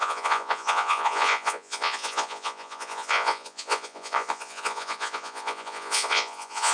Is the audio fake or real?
fake